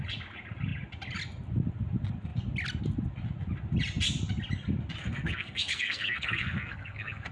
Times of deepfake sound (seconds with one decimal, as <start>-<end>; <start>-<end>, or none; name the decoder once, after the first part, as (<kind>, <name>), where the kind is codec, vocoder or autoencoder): 5.0-7.3 (codec, SNAC)